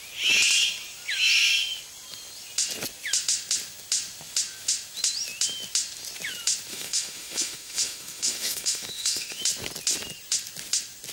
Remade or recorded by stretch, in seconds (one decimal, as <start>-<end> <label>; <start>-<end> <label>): 0.0-6.7 recorded; 6.7-9.4 remade; 9.4-11.1 recorded